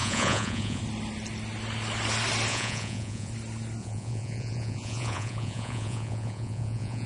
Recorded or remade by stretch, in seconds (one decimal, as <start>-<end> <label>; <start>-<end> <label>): 0.0-0.8 remade; 0.8-2.5 recorded; 2.5-3.3 remade; 3.3-3.8 recorded; 3.8-7.1 remade